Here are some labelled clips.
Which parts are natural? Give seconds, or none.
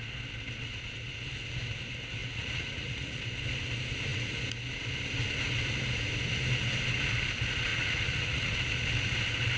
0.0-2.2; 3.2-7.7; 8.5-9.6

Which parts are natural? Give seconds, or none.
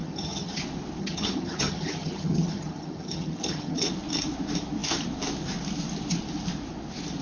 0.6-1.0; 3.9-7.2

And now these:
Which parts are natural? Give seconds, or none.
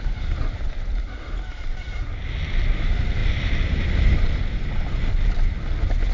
0.0-6.1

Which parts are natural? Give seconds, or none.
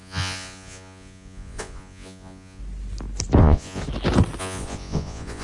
2.6-3.4; 3.8-4.4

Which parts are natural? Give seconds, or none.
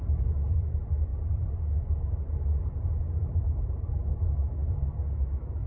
0.0-1.1; 3.9-5.7